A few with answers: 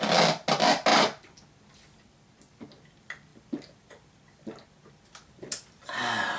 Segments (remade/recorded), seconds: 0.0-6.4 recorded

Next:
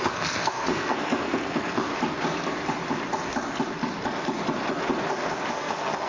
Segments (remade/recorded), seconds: 0.0-1.9 remade; 1.9-5.5 recorded; 5.5-6.1 remade

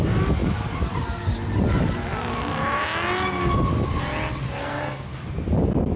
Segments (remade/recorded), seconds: 0.0-4.6 recorded; 4.6-5.2 remade; 5.2-6.0 recorded

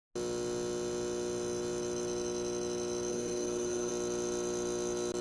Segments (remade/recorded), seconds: 0.0-3.1 recorded; 3.1-3.9 remade; 3.9-5.2 recorded

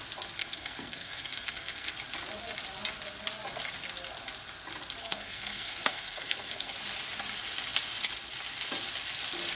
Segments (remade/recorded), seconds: 0.0-0.4 recorded; 0.4-1.9 remade; 1.9-5.0 recorded; 5.0-6.7 remade; 6.7-9.6 recorded